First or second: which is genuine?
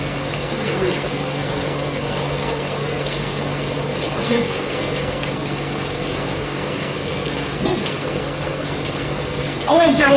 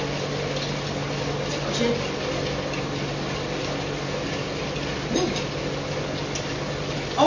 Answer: second